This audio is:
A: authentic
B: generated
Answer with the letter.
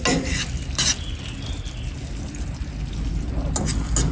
A